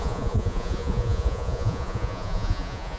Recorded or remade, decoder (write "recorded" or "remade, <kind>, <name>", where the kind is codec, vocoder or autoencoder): remade, vocoder, Vocos